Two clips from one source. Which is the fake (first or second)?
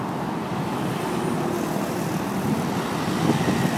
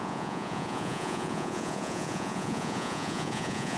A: second